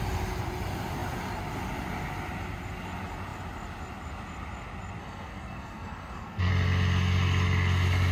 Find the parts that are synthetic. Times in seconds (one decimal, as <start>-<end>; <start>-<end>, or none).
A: 5.0-6.5